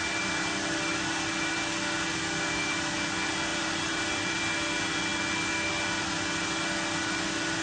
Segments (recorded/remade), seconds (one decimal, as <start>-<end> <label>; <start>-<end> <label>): 0.0-3.5 recorded; 3.5-4.4 remade; 4.4-7.6 recorded